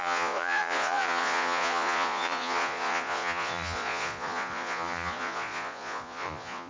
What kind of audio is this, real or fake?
fake